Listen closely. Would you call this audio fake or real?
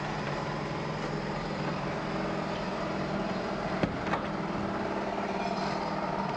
fake